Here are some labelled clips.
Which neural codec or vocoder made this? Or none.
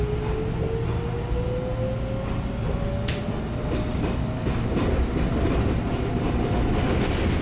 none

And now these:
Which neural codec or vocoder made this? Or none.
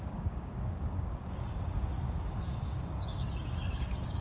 codec, DAC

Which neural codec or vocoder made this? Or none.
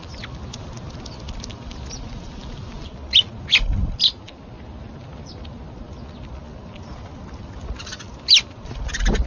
none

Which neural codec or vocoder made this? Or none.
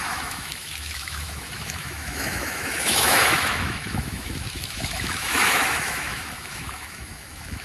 autoencoder, DAC-VAE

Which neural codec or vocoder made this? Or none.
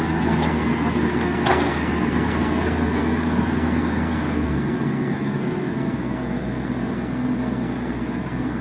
codec, SNAC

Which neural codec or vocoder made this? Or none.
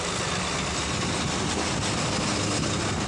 none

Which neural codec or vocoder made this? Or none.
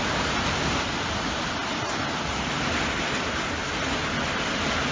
none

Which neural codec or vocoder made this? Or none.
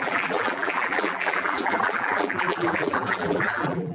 vocoder, BigVGAN v2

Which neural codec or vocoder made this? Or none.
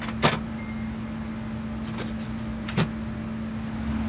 none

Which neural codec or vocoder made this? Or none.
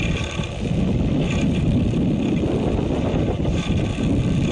none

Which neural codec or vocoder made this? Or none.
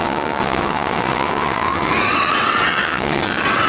vocoder, WaveNeXt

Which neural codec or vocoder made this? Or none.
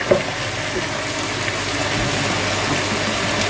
none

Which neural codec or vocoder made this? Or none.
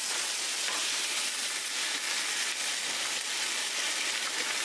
none